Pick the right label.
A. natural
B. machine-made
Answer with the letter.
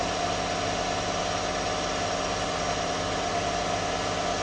A